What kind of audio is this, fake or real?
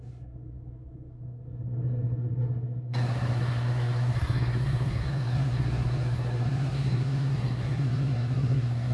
fake